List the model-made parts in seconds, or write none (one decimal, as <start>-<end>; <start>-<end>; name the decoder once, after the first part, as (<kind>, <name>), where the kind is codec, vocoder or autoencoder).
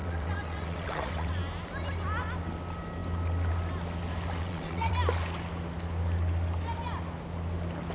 0.0-1.4 (vocoder, WaveNeXt); 4.4-4.9